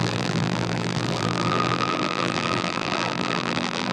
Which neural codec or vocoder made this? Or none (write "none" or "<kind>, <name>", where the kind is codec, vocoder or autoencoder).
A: vocoder, BigVGAN v2